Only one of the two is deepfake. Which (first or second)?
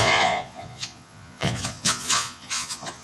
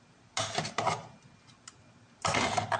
first